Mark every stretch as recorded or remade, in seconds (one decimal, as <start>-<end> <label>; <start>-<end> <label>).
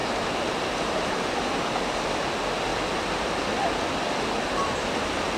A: 0.0-2.1 remade; 2.1-5.4 recorded